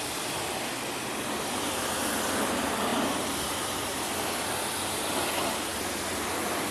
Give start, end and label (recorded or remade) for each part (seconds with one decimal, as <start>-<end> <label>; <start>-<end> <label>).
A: 0.0-6.7 recorded